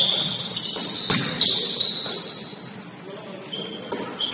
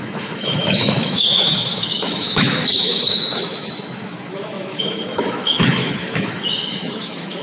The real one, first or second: first